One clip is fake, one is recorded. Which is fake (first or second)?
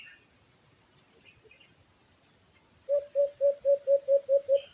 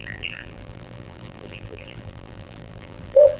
second